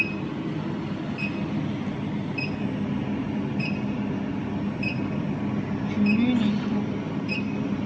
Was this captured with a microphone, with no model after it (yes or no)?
yes